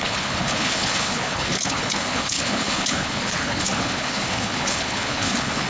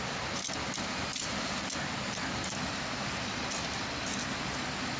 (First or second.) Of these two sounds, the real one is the second